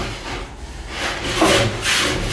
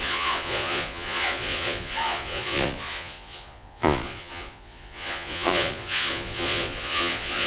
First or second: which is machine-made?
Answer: second